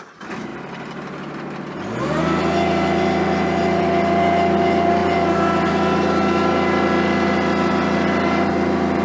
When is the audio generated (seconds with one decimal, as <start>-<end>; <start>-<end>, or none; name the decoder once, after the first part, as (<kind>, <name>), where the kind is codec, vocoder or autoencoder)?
none